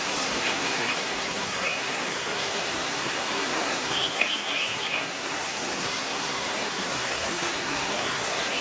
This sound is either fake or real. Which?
fake